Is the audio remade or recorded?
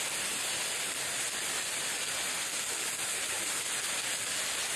recorded